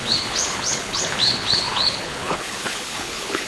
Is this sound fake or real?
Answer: fake